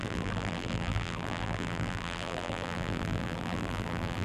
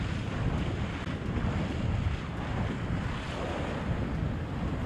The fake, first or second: first